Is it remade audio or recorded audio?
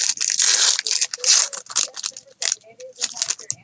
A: recorded